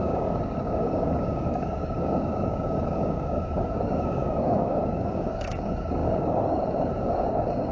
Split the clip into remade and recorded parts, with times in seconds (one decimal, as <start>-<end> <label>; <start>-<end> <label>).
0.0-7.7 remade